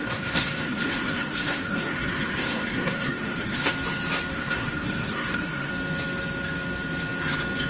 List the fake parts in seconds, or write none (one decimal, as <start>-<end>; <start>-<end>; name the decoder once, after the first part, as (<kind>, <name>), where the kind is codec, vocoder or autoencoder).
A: 0.0-3.7 (codec, SNAC); 4.3-5.7